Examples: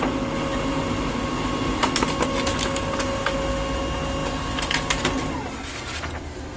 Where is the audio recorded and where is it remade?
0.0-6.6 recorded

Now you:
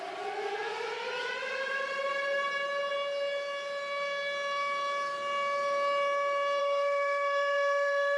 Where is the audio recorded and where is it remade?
0.0-6.6 recorded; 6.6-8.2 remade